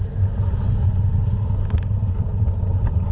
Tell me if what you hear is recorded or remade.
recorded